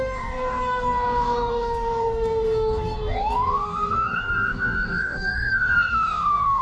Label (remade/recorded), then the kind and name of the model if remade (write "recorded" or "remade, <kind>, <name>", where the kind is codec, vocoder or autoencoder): remade, codec, DAC